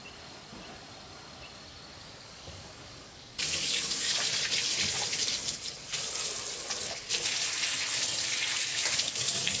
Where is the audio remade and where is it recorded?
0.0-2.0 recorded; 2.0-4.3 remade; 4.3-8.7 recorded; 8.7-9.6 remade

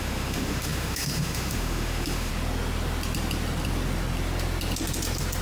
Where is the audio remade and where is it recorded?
0.0-2.3 remade; 2.3-5.4 recorded

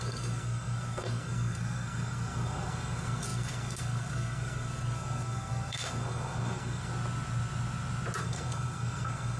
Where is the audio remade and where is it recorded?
0.0-6.9 remade; 6.9-8.2 recorded; 8.2-9.4 remade

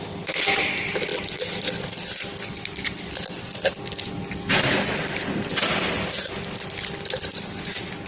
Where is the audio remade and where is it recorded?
0.0-8.1 recorded

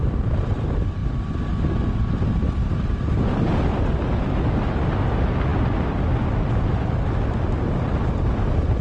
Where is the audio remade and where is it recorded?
0.0-8.8 recorded

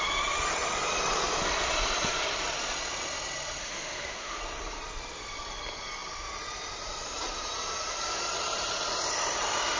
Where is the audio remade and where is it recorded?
0.0-3.6 recorded; 3.6-4.4 remade; 4.4-9.8 recorded

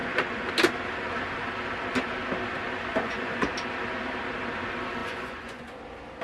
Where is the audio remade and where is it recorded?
0.0-0.5 remade; 0.5-2.9 recorded; 2.9-3.5 remade; 3.5-5.0 recorded; 5.0-5.8 remade; 5.8-6.2 recorded